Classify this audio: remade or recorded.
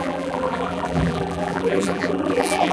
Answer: remade